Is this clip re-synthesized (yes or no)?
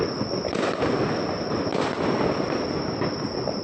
no